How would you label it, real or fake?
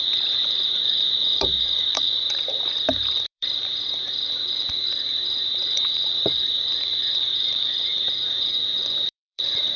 fake